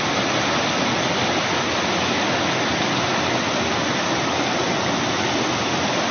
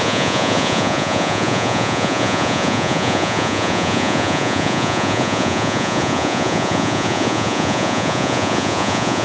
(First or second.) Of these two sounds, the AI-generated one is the second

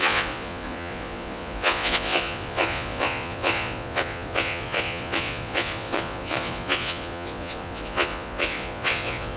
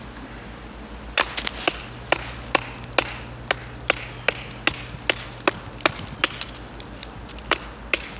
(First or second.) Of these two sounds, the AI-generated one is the first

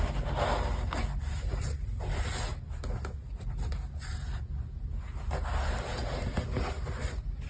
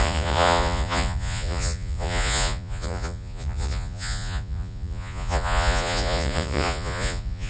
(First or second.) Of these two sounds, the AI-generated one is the second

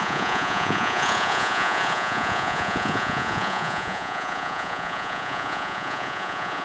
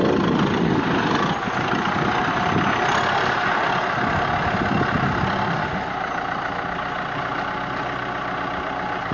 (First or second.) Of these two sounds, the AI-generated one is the first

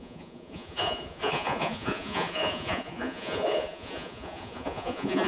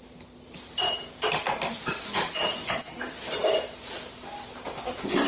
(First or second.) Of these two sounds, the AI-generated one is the first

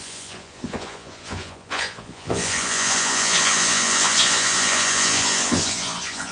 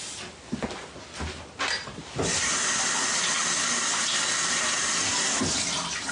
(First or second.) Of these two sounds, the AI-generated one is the first